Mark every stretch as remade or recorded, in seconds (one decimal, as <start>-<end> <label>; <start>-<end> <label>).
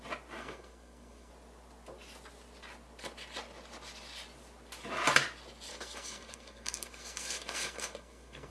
0.0-0.4 recorded; 0.4-1.3 remade; 1.3-5.7 recorded; 5.7-8.5 remade